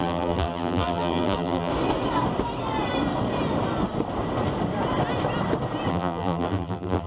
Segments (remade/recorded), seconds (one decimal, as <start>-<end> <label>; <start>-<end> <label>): 0.0-1.7 remade; 1.7-5.9 recorded; 5.9-7.1 remade